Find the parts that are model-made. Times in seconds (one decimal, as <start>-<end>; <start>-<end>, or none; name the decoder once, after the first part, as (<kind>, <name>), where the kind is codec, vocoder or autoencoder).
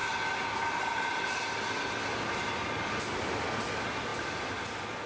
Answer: none